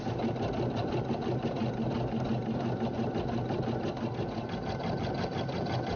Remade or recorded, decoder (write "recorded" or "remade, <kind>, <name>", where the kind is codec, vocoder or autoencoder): recorded